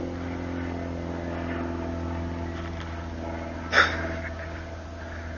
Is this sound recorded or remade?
recorded